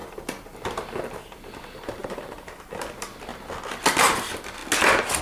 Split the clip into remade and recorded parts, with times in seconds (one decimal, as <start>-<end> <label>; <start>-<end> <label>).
0.0-2.0 recorded; 2.0-2.8 remade; 2.8-5.2 recorded